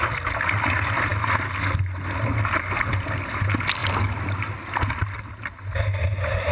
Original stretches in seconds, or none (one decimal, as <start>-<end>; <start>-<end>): 0.0-6.5